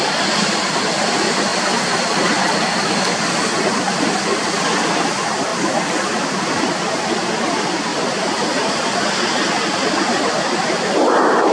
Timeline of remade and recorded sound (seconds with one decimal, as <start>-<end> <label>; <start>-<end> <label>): 0.0-7.9 recorded; 7.9-9.0 remade; 9.0-11.5 recorded